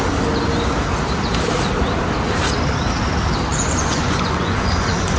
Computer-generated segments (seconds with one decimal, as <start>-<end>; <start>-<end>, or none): 3.5-5.2